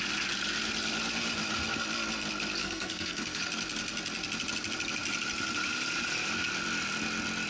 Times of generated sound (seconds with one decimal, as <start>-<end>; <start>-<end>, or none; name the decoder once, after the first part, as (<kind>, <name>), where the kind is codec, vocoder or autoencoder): 2.6-3.4 (codec, SNAC)